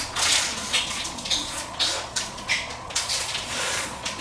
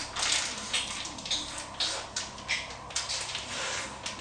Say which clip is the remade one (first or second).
first